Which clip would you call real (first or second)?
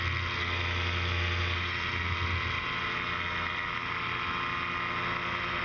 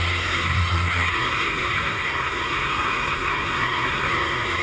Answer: first